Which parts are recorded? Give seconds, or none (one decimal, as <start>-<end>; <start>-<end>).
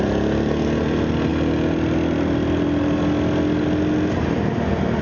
0.0-5.0